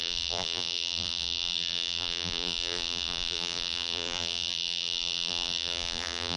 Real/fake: fake